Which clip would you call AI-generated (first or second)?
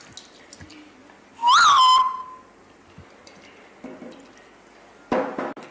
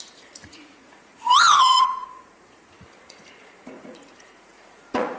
second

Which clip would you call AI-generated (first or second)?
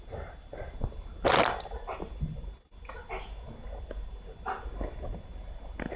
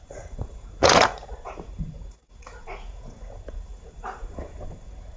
second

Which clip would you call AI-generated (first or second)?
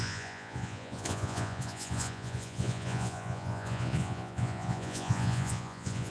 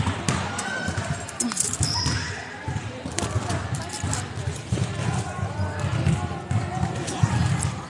first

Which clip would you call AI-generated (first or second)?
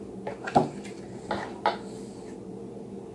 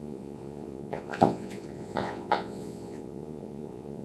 second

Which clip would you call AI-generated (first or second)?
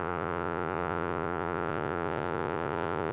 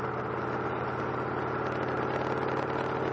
first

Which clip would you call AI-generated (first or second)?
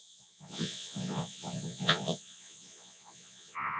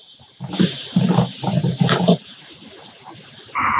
first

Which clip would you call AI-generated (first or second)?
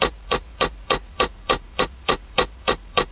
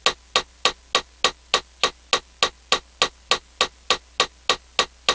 first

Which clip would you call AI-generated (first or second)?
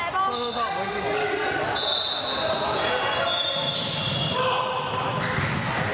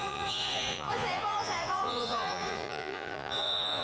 second